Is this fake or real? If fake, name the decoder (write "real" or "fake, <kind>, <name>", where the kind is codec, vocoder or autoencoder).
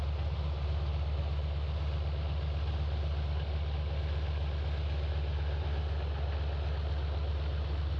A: real